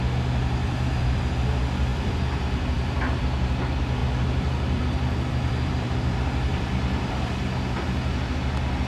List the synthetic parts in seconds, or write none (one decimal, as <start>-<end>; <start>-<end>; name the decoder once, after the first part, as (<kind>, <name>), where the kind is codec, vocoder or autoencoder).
0.6-1.3 (vocoder, BigVGAN v2); 1.9-3.2; 4.0-7.4